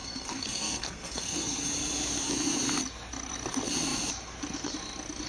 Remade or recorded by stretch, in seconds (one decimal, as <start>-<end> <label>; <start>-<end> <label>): 0.0-1.7 remade; 1.7-5.3 recorded